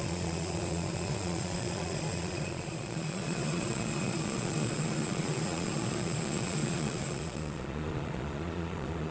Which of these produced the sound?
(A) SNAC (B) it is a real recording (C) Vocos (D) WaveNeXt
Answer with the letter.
C